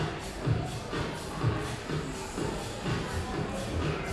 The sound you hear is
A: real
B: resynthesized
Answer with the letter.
A